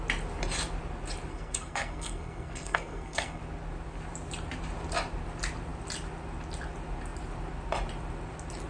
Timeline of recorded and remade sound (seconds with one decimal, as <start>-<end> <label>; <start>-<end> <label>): 0.0-1.3 recorded; 1.3-3.4 remade; 3.4-8.7 recorded